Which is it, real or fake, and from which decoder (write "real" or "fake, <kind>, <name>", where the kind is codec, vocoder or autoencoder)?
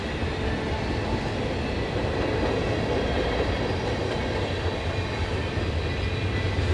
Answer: real